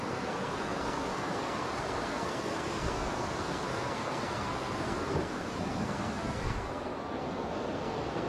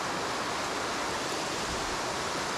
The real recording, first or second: second